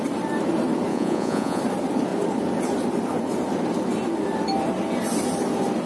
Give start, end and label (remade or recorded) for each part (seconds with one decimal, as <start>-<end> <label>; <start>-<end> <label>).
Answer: 0.0-0.9 recorded; 0.9-1.6 remade; 1.6-5.9 recorded